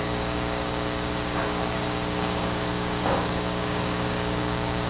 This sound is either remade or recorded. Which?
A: remade